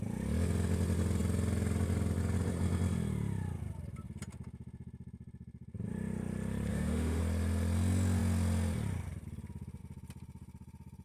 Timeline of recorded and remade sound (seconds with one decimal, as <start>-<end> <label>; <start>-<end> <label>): 0.0-6.7 recorded; 6.7-7.2 remade; 7.2-11.0 recorded